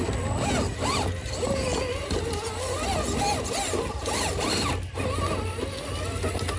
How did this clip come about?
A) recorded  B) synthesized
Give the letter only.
A